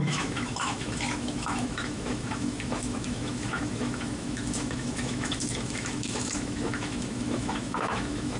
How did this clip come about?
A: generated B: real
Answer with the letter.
A